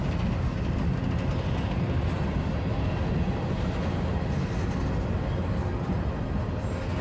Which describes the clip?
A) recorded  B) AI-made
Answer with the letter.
A